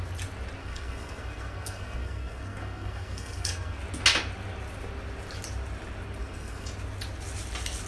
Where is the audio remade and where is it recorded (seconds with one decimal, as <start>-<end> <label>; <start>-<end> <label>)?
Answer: 0.0-0.6 recorded; 0.6-3.8 remade; 3.8-6.2 recorded; 6.2-6.7 remade; 6.7-7.9 recorded